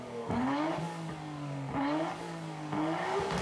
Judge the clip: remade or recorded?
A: remade